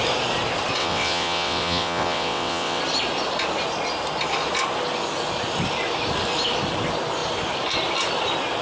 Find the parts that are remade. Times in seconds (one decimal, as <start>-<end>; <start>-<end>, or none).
0.8-2.8

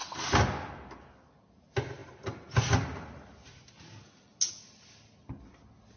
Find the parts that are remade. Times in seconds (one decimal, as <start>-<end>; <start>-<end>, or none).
none

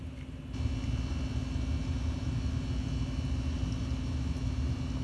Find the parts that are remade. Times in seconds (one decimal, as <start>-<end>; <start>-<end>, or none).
none